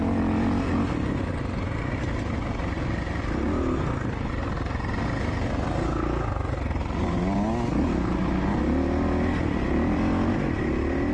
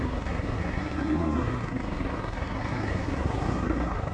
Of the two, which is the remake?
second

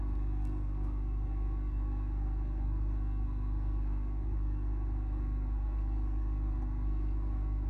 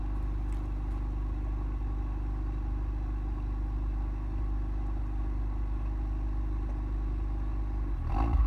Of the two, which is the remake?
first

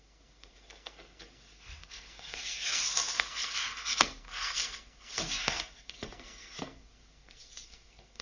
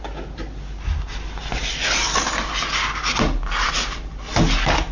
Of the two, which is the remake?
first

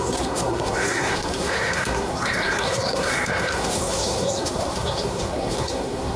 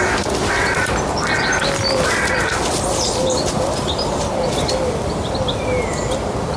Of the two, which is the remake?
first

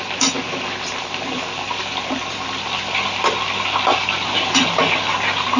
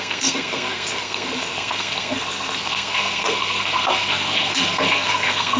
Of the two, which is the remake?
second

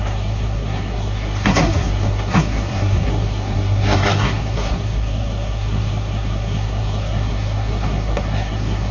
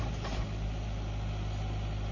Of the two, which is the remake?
first